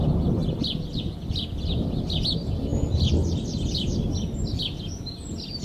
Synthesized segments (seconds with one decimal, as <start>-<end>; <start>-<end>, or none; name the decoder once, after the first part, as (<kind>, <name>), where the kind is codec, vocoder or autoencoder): none